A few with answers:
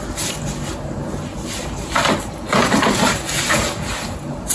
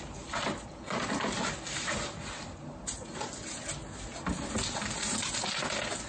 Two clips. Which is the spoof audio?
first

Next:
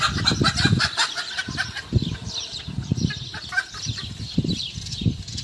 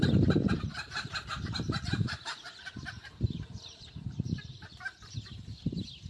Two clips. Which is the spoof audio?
second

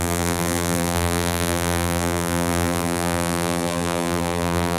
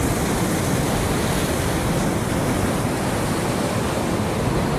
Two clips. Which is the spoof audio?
first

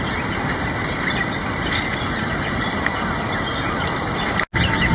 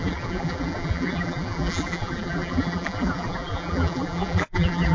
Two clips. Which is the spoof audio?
second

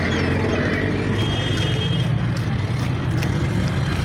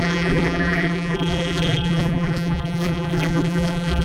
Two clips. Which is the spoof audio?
second